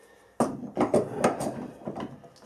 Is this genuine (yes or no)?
yes